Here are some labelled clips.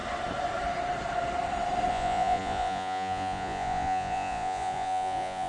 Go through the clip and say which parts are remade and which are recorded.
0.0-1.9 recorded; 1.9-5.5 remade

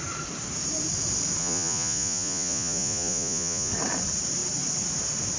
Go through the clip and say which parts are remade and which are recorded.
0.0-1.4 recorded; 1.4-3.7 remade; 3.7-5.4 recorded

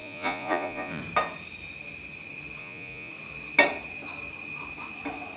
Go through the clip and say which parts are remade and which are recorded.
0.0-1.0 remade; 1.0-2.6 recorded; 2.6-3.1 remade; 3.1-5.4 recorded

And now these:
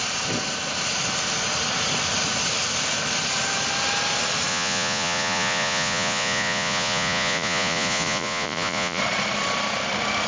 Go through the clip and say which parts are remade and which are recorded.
0.0-4.5 recorded; 4.5-9.0 remade; 9.0-10.3 recorded

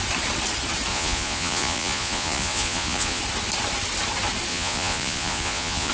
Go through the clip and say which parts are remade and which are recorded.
0.0-0.9 recorded; 0.9-3.2 remade; 3.2-4.5 recorded; 4.5-5.9 remade